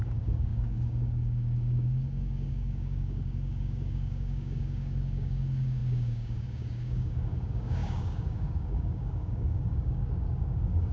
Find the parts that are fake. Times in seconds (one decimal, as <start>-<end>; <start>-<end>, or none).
0.0-10.9

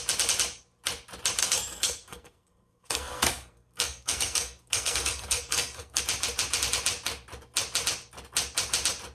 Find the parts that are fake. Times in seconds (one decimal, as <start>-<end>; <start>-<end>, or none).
1.4-6.0

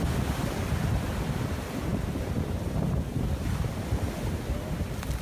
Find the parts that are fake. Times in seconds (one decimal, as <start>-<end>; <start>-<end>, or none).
none

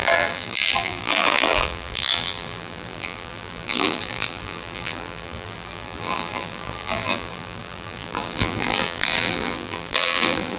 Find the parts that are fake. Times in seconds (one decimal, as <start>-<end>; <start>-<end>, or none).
0.0-10.6

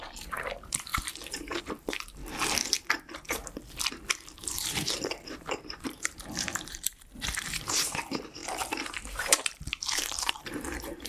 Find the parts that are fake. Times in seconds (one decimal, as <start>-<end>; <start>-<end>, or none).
0.0-2.2; 2.9-3.4; 4.1-11.1

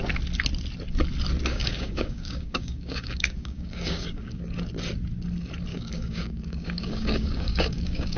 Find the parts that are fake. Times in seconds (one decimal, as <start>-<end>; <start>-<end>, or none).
1.5-4.4; 5.7-8.2